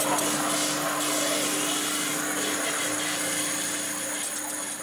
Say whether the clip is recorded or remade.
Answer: recorded